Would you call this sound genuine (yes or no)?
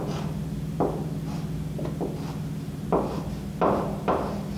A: yes